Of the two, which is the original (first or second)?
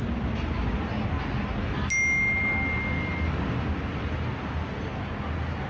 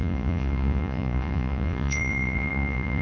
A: first